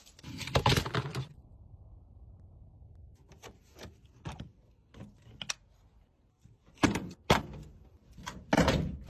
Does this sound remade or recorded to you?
recorded